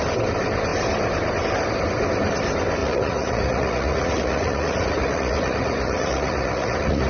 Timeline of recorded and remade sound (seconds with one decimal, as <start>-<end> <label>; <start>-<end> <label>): 0.0-2.8 recorded; 2.8-7.1 remade